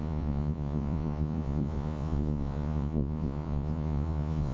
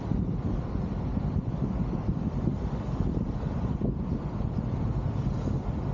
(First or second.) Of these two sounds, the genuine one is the second